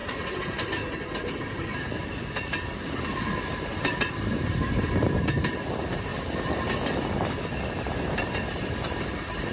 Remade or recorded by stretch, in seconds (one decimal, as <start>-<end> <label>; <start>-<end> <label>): 0.0-4.1 recorded; 4.1-6.1 remade; 6.1-7.8 recorded; 7.8-9.5 remade